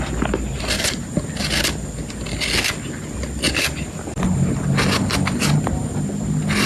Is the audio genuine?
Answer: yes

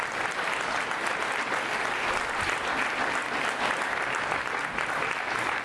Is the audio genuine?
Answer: yes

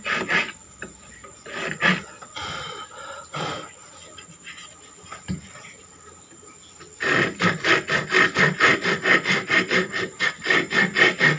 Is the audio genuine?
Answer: yes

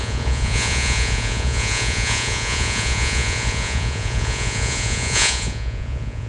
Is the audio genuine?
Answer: no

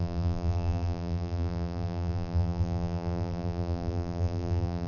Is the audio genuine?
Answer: no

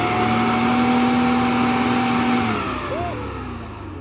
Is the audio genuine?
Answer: yes